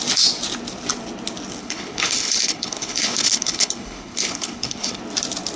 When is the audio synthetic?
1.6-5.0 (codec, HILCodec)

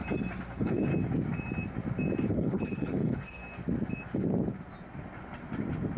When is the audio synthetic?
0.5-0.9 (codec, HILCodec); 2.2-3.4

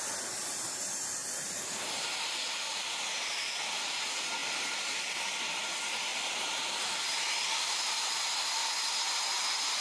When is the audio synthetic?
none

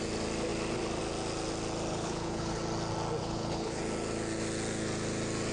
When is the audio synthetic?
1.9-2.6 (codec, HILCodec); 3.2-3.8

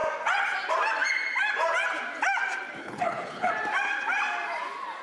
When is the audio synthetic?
2.8-3.5 (codec, HILCodec)

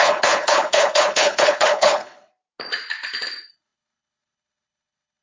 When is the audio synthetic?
0.0-2.3 (codec, HILCodec); 3.5-5.2

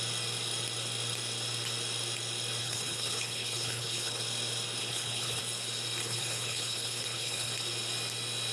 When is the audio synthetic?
2.6-4.2 (codec, HILCodec); 4.8-5.4; 6.0-7.5